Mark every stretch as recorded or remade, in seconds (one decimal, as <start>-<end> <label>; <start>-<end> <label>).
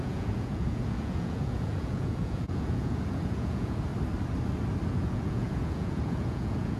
0.0-3.9 remade; 3.9-4.9 recorded; 4.9-6.8 remade